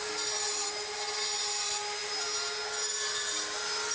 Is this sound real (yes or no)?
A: yes